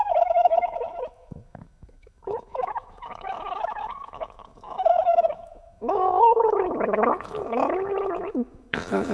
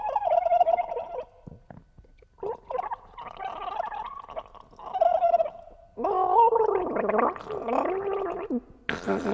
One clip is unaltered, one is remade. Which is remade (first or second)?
first